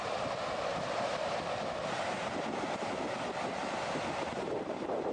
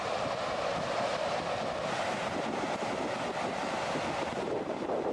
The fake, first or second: first